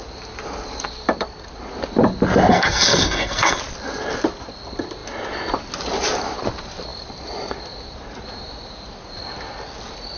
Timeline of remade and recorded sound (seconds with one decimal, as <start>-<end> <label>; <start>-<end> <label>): 0.0-2.5 recorded; 2.5-3.6 remade; 3.6-10.2 recorded